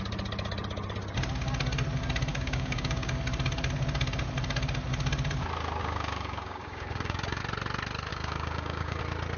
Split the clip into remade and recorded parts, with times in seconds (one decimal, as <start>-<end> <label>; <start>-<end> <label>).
0.0-2.3 recorded; 2.3-3.2 remade; 3.2-5.8 recorded; 5.8-7.4 remade; 7.4-8.1 recorded; 8.1-9.0 remade; 9.0-9.4 recorded